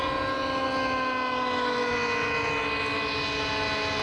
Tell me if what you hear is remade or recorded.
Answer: recorded